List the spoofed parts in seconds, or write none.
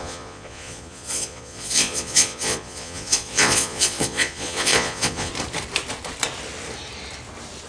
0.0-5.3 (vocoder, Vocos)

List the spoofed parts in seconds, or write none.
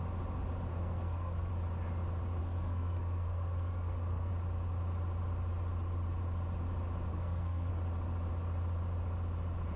0.7-1.5 (codec, SNAC); 2.4-4.3; 7.1-7.7